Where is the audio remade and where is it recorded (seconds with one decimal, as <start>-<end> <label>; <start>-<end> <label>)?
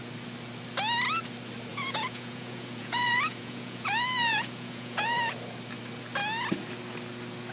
0.0-1.7 recorded; 1.7-5.3 remade; 5.3-7.5 recorded